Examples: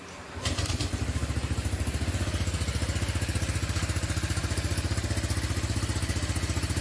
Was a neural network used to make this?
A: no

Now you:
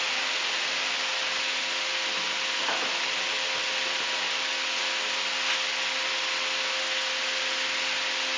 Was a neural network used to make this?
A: no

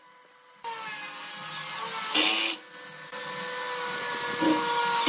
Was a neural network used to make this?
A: no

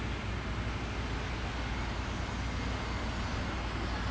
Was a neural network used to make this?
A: no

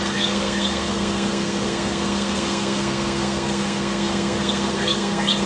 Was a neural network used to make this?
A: yes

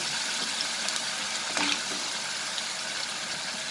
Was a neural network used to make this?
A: no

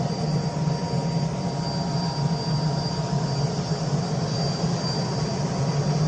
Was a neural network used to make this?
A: no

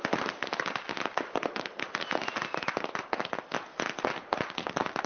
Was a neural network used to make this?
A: no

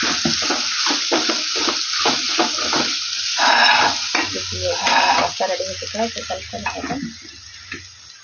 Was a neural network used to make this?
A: no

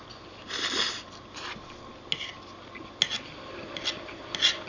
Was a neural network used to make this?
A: no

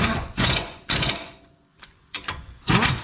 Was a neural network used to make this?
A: yes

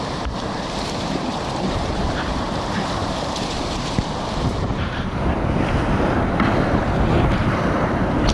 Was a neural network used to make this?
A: yes